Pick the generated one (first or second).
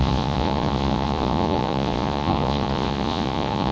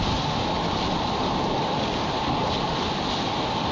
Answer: first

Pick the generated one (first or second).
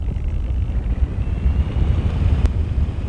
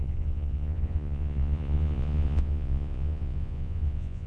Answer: second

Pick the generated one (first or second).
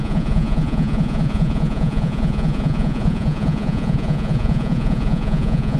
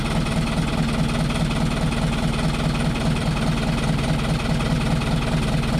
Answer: first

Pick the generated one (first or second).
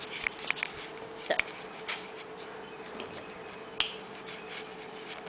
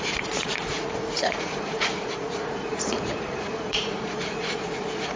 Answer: second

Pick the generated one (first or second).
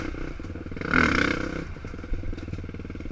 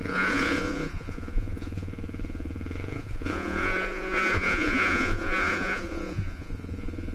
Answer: second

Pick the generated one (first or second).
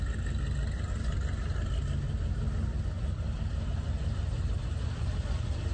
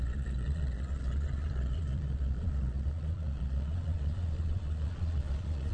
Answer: second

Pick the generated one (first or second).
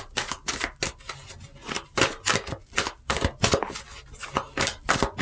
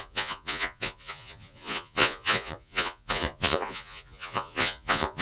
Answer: second